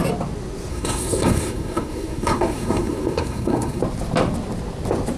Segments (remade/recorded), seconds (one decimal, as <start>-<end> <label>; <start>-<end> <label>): 0.0-0.7 recorded; 0.7-3.8 remade; 3.8-5.2 recorded